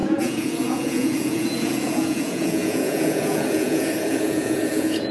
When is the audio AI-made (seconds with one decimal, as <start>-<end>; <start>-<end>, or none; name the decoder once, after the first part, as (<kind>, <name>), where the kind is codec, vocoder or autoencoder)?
0.0-5.1 (vocoder, Vocos)